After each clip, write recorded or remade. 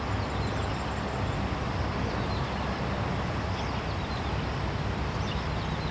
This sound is recorded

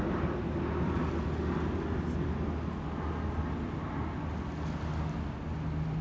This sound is recorded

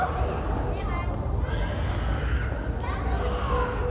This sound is recorded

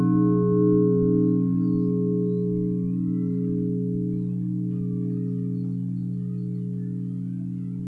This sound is recorded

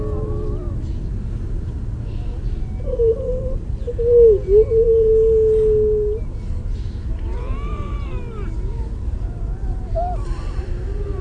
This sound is recorded